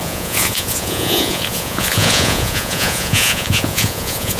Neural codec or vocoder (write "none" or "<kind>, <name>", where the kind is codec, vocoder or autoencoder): vocoder, Vocos